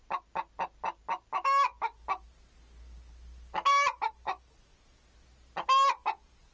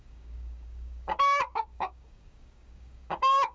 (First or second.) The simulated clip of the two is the second